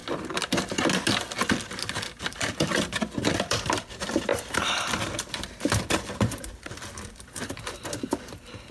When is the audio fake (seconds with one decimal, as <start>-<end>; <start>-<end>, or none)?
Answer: 2.2-8.7